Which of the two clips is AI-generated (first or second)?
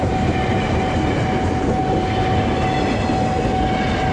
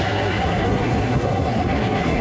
second